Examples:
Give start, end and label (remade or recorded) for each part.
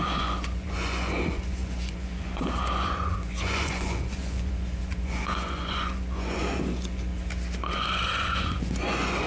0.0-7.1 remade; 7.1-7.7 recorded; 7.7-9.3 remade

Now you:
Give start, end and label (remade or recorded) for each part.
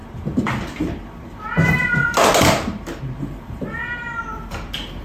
0.0-5.0 recorded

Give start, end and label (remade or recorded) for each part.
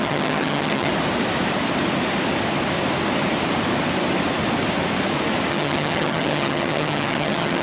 0.0-0.9 remade; 0.9-5.5 recorded; 5.5-7.6 remade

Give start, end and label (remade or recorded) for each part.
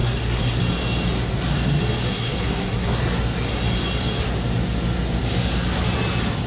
0.0-0.6 remade; 0.6-2.0 recorded; 2.0-3.1 remade; 3.1-6.5 recorded